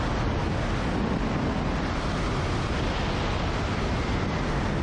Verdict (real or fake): real